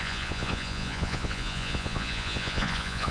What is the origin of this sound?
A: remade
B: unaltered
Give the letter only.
A